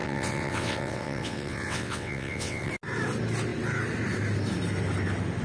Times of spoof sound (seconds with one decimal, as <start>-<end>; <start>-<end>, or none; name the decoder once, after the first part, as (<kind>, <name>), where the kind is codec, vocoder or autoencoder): 0.0-2.7 (vocoder, WaveNeXt)